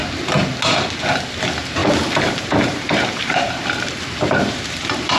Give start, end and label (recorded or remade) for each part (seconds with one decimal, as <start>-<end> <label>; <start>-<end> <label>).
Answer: 0.0-1.4 recorded; 1.4-5.2 remade